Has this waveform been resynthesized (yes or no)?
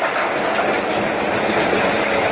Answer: no